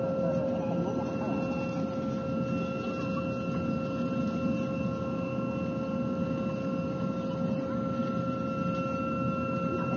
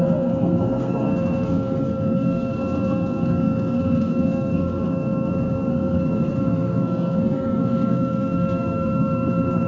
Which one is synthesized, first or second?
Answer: second